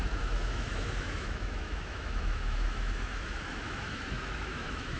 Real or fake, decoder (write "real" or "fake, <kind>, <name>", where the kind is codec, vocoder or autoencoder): fake, autoencoder, DAC-VAE